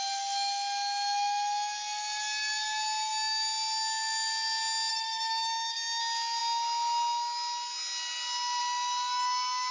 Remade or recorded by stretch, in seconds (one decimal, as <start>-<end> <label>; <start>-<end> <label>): 0.0-4.9 recorded; 4.9-6.0 remade; 6.0-9.7 recorded

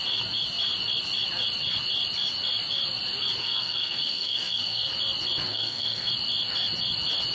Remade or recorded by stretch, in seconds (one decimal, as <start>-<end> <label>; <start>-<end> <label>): 0.0-3.4 recorded; 3.4-4.9 remade; 4.9-5.5 recorded; 5.5-6.1 remade; 6.1-7.3 recorded

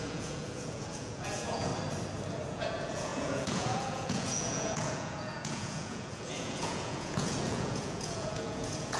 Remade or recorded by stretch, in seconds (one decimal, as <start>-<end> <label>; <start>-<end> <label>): 0.0-1.7 remade; 1.7-2.5 recorded; 2.5-9.0 remade

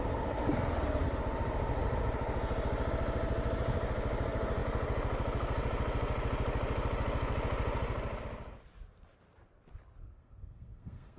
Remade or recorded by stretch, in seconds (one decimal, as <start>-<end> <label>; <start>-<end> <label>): 0.0-10.0 recorded; 10.0-11.2 remade

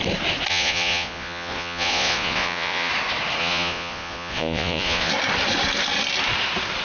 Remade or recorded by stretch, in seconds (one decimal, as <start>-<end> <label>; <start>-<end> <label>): 0.0-0.5 recorded; 0.5-2.9 remade; 2.9-3.4 recorded; 3.4-5.1 remade; 5.1-6.8 recorded